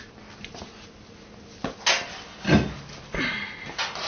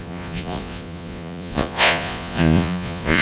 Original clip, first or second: first